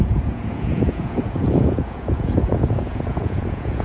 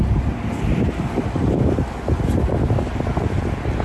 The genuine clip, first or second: second